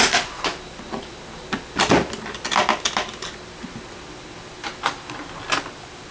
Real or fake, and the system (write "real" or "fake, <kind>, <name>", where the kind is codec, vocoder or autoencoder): real